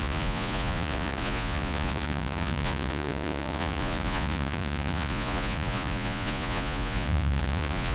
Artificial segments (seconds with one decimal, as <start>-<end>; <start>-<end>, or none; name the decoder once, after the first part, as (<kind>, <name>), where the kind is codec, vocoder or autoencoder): 0.0-7.9 (vocoder, Vocos)